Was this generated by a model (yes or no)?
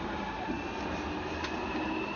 no